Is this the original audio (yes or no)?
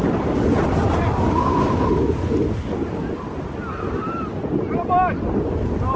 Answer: yes